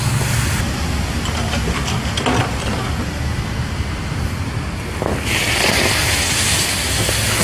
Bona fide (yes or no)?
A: yes